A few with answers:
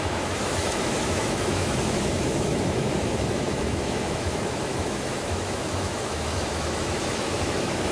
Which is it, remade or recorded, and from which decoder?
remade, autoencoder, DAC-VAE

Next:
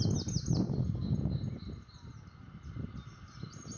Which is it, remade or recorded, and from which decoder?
recorded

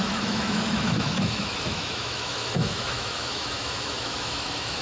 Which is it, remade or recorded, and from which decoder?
remade, autoencoder, DAC-VAE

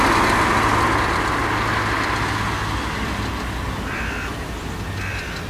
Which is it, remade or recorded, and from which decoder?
recorded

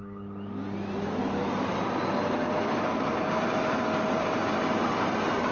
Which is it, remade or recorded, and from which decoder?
recorded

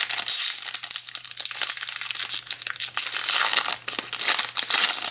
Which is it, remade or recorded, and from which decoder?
recorded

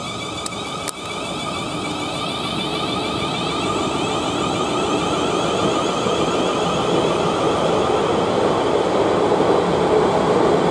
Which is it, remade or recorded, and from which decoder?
recorded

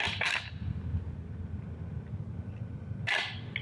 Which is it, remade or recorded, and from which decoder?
recorded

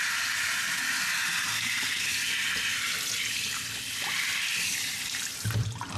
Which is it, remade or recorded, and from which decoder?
recorded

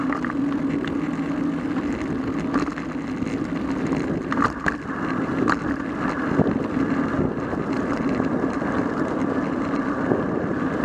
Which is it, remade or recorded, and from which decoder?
recorded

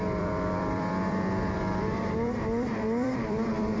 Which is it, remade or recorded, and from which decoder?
remade, vocoder, BigVGAN v2